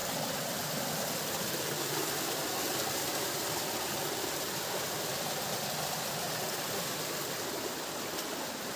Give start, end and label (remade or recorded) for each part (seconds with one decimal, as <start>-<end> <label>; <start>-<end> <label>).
0.0-8.8 recorded